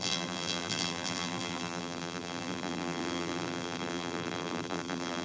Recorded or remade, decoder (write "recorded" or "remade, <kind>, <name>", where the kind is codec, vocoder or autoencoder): remade, vocoder, BigVGAN v2